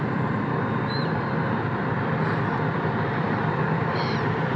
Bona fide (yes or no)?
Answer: no